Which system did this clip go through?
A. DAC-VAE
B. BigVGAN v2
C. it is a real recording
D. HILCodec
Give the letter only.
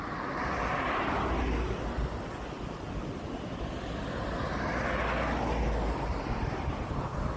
C